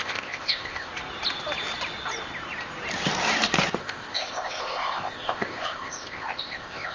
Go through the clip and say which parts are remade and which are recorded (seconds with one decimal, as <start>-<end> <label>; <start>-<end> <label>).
0.0-0.9 remade; 0.9-3.8 recorded; 3.8-6.9 remade